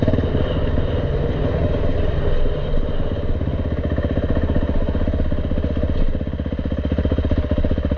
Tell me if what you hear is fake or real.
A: real